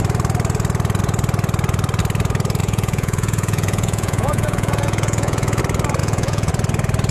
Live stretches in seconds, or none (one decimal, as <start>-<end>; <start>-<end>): 0.0-2.6; 5.6-6.0; 6.5-7.1